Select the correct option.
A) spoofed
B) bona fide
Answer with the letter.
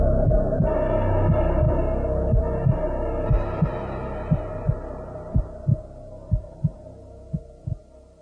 B